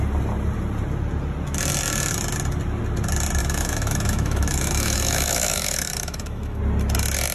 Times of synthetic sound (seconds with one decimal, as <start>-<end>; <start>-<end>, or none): 3.4-6.6

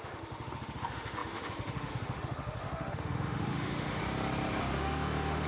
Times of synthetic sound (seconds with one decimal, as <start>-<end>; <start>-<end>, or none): 0.0-4.0; 4.6-5.5

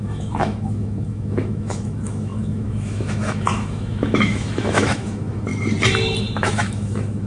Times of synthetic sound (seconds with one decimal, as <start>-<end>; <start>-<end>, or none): 0.0-5.5; 6.3-7.3

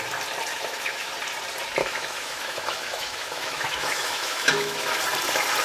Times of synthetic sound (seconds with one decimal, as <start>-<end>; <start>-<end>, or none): 0.5-1.1; 1.8-5.0

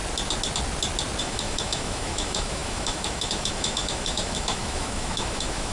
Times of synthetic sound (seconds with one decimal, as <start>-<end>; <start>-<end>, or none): 1.2-5.7

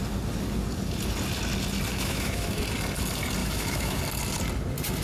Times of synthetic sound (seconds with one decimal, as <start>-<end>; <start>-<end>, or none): 1.9-2.6; 3.4-4.0

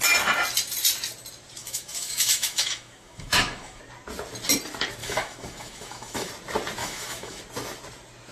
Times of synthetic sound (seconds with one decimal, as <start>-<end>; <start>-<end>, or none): 1.6-3.8; 5.0-6.3; 6.8-7.4